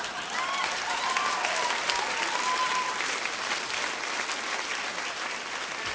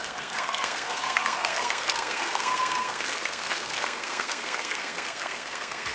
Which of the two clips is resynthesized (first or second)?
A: second